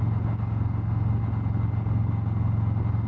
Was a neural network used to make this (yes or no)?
no